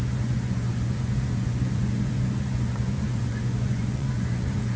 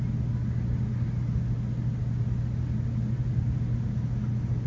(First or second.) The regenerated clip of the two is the first